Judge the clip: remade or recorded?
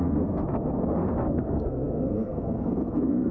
remade